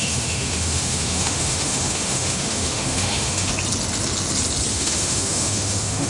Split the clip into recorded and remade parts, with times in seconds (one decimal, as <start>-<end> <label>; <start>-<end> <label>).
0.0-3.5 remade; 3.5-4.7 recorded; 4.7-6.1 remade